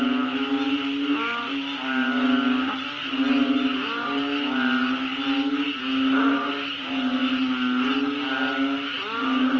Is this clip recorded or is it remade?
recorded